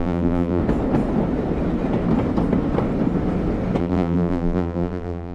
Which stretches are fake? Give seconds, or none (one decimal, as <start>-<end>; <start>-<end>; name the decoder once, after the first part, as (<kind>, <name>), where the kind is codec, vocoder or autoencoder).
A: 0.0-0.6 (vocoder, BigVGAN v2); 3.8-5.3

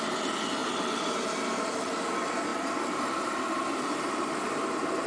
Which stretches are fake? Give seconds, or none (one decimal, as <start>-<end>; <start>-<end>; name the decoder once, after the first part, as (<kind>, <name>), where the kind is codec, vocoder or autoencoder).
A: 0.6-1.1 (vocoder, BigVGAN v2); 2.5-5.1